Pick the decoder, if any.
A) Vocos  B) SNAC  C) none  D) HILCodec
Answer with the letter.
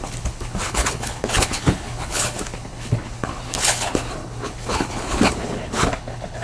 D